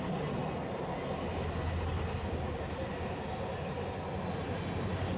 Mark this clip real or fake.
real